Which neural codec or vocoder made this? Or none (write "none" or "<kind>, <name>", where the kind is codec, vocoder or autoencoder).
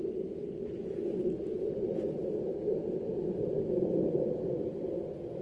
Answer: none